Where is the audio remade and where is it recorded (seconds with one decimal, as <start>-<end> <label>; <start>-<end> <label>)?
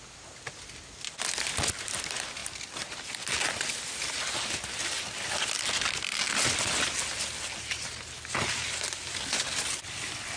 0.0-10.4 recorded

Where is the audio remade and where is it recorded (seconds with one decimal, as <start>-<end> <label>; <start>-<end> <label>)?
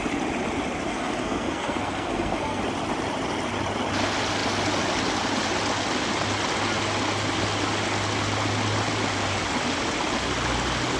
0.0-0.9 recorded; 0.9-2.6 remade; 2.6-11.0 recorded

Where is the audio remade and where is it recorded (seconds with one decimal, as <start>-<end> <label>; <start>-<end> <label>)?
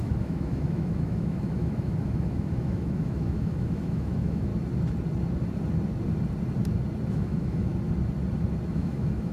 0.0-4.5 remade; 4.5-7.1 recorded; 7.1-7.7 remade; 7.7-8.7 recorded; 8.7-9.3 remade